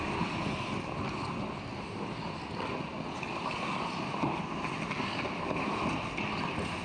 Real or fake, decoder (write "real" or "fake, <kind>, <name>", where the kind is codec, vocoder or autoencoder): real